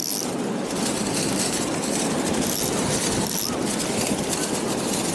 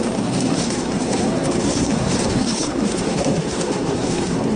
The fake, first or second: second